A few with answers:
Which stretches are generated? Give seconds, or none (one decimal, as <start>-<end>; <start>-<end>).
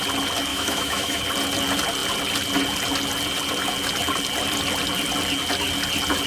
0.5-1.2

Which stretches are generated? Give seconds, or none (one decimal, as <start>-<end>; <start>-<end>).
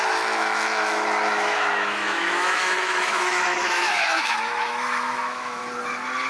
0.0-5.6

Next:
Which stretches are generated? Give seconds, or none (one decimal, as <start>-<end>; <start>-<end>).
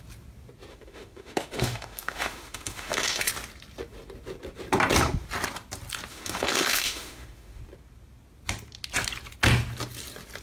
0.7-3.3; 6.1-7.6